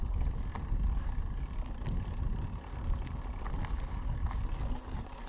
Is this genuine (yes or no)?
yes